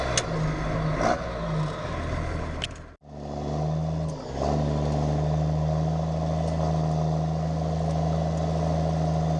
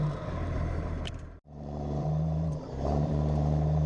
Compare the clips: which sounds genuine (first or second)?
first